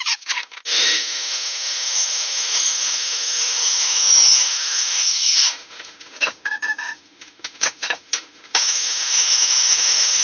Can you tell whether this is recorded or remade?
remade